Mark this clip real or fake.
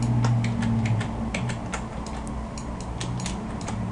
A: real